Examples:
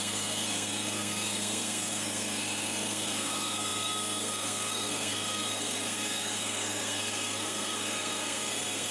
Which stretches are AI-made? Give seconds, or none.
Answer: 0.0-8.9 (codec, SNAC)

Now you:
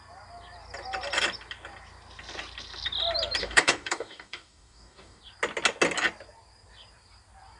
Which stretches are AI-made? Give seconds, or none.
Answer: 3.4-5.2 (codec, DAC)

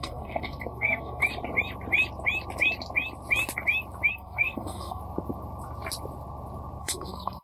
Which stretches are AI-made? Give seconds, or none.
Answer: 0.0-1.2 (codec, SNAC); 4.1-5.0; 6.8-7.4

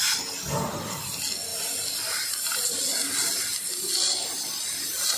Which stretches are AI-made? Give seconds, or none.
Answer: none